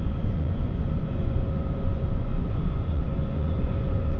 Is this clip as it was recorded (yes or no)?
no